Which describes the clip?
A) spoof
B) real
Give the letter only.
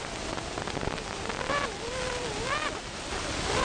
B